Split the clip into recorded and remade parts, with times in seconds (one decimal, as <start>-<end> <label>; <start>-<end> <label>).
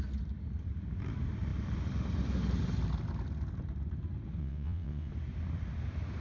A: 0.0-4.4 recorded; 4.4-5.1 remade; 5.1-6.2 recorded